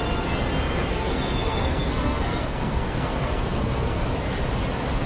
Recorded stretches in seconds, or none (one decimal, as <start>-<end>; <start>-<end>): 0.0-0.9; 4.0-5.1